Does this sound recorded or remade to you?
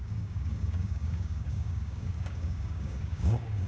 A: remade